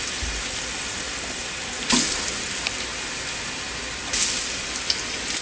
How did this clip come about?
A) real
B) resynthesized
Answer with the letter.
A